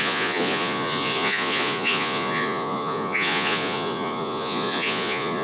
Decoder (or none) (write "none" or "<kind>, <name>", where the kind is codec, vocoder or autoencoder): vocoder, Vocos